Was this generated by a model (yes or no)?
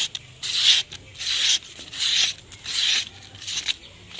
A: no